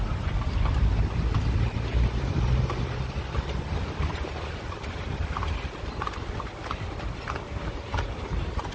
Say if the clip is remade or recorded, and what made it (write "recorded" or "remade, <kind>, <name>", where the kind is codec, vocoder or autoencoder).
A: remade, vocoder, BigVGAN v2